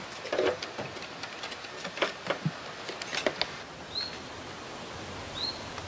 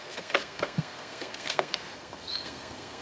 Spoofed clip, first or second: second